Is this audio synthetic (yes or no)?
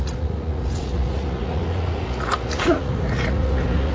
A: yes